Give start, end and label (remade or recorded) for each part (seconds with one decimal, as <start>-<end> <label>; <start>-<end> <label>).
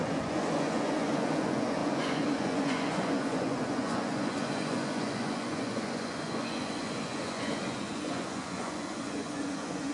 0.0-9.9 remade